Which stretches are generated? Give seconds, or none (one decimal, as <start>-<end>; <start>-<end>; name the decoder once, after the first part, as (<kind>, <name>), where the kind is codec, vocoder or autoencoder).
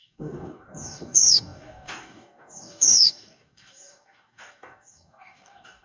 0.0-5.8 (codec, DAC)